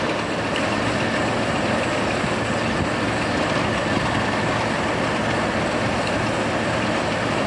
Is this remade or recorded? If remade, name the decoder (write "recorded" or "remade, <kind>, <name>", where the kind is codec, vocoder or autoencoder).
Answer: recorded